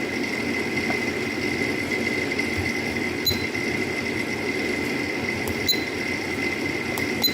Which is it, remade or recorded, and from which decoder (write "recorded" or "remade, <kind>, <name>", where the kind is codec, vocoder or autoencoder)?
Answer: recorded